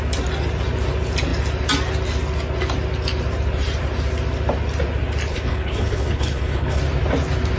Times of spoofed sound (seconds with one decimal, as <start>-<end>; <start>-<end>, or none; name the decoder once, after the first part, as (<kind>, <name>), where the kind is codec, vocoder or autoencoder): 5.3-6.8 (codec, HILCodec)